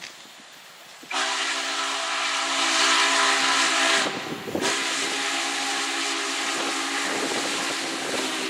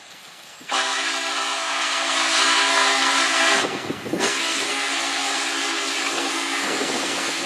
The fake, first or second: second